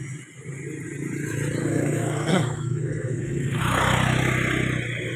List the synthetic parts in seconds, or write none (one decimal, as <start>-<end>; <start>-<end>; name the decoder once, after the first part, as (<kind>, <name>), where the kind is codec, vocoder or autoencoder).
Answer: 1.6-3.6 (codec, SNAC)